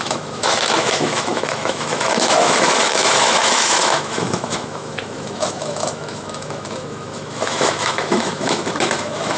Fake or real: fake